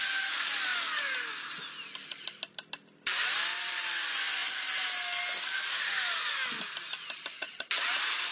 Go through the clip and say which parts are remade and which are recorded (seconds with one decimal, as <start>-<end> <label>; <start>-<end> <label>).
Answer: 0.0-8.3 recorded